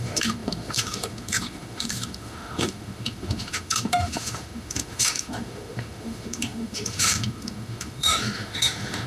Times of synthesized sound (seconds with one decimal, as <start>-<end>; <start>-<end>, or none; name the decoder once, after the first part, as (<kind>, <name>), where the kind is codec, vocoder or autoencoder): 0.0-9.1 (autoencoder, DAC-VAE)